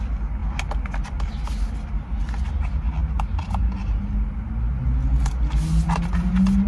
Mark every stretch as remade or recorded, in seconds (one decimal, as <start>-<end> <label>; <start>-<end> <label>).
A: 0.0-6.7 recorded